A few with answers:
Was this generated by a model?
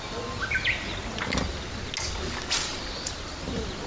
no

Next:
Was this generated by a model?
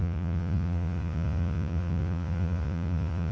yes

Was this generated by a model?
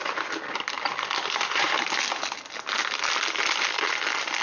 no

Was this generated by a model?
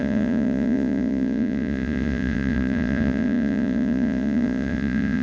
yes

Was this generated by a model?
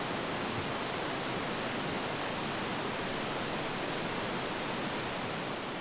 no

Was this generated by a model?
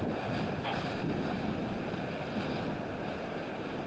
no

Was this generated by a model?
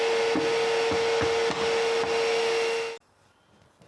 no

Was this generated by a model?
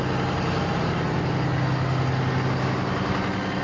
no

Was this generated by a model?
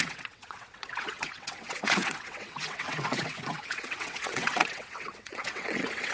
yes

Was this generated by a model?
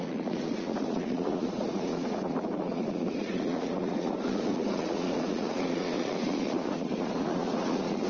yes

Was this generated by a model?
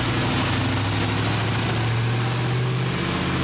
no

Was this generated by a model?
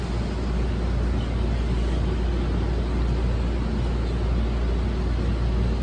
no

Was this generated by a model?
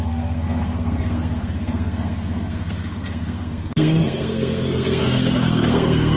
yes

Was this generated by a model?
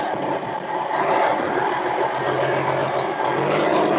no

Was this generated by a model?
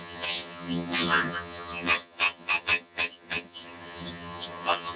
yes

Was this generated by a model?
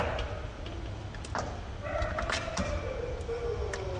no